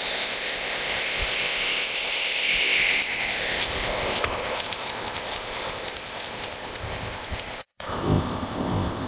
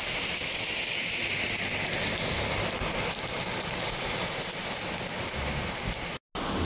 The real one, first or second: second